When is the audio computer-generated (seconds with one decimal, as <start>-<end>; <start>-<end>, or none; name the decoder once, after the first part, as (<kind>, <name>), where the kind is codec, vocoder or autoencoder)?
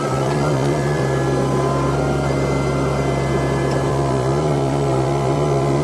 0.0-1.0 (vocoder, Vocos); 3.9-5.8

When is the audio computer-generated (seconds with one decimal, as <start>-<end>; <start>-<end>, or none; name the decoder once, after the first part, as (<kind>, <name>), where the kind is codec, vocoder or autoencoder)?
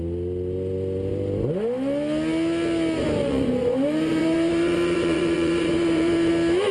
3.2-6.3 (vocoder, Vocos)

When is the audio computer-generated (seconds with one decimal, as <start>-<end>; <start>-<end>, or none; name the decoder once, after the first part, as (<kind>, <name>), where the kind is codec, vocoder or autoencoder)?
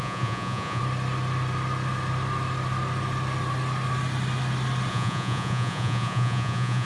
0.0-0.8 (vocoder, Vocos); 4.9-6.9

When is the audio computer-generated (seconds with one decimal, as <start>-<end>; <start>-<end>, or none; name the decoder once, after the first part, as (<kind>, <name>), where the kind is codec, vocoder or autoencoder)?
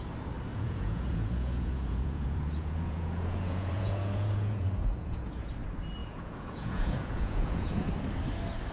0.5-5.5 (vocoder, Vocos); 6.0-7.9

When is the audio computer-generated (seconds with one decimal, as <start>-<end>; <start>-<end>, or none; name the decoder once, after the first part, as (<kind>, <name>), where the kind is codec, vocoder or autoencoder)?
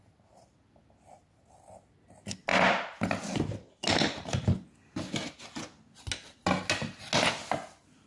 none